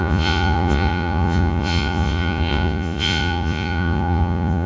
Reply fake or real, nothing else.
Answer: fake